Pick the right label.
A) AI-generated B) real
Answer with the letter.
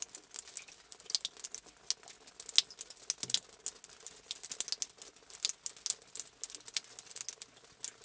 B